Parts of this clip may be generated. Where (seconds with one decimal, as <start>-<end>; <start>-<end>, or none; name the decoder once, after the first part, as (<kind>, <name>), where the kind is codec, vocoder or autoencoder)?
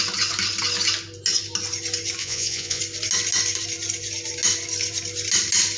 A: 2.2-2.8 (vocoder, Vocos)